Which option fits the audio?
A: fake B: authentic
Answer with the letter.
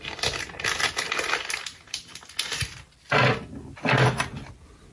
B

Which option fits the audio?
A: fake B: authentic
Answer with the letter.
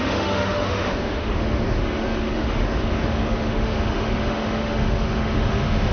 A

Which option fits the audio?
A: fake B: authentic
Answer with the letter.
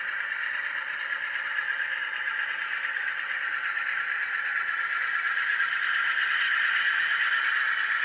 B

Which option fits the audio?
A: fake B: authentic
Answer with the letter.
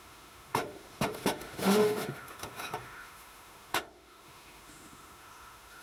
A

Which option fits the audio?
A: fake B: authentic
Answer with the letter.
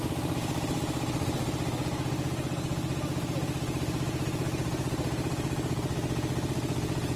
B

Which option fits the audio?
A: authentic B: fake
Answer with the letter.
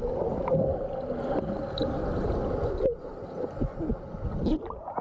A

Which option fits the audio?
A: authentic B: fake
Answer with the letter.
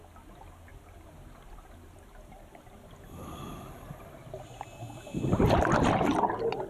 A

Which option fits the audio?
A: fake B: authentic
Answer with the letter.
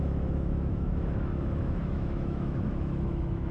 A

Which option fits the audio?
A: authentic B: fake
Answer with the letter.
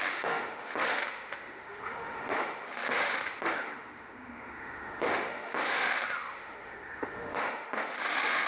B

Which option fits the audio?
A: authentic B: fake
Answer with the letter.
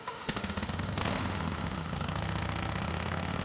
B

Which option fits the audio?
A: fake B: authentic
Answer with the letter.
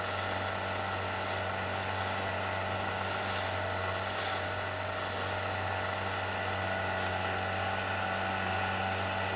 B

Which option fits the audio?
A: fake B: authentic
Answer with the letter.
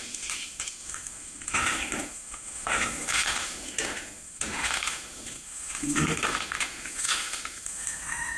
A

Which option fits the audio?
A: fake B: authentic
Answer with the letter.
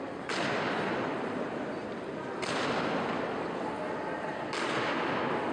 B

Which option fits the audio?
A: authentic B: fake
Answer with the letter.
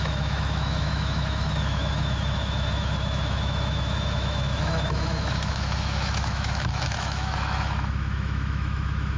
B